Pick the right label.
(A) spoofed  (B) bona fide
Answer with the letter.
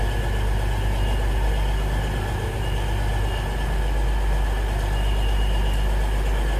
B